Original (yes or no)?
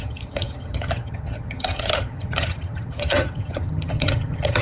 no